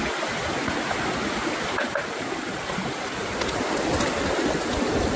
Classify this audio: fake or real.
real